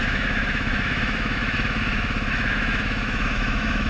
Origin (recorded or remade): remade